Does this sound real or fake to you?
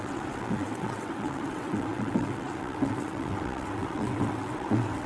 fake